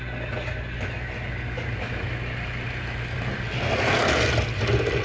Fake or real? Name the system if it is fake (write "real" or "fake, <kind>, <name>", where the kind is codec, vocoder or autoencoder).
real